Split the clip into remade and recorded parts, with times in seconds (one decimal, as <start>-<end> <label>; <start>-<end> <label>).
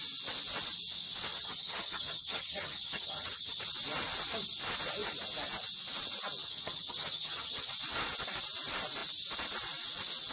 0.0-1.3 recorded; 1.3-3.6 remade; 3.6-6.4 recorded; 6.4-7.7 remade; 7.7-10.3 recorded